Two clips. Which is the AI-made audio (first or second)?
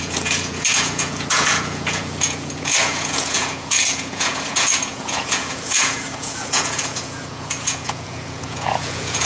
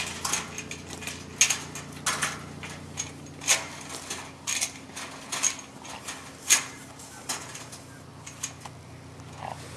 first